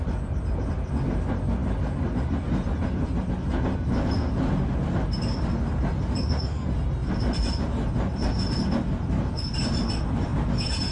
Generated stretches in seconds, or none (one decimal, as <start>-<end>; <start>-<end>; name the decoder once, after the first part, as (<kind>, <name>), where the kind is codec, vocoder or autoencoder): 7.0-8.3 (vocoder, BigVGAN v2)